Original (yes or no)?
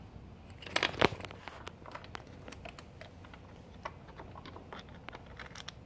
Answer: yes